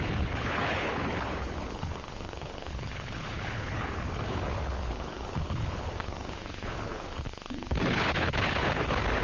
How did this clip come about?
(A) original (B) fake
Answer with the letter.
B